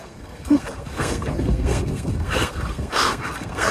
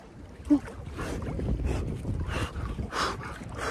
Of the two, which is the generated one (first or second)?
first